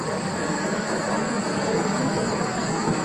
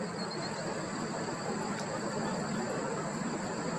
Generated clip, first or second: first